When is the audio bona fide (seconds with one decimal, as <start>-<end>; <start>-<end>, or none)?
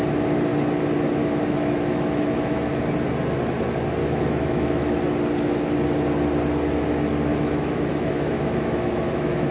0.0-1.2; 2.8-4.0; 4.9-7.3